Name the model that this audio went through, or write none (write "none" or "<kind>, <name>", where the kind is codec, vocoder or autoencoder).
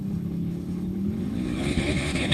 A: codec, HILCodec